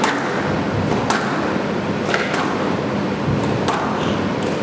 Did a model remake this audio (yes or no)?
no